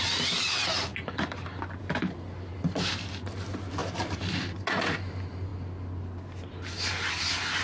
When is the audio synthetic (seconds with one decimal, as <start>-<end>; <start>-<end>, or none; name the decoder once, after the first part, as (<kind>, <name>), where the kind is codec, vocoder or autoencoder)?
0.9-2.2 (vocoder, BigVGAN v2)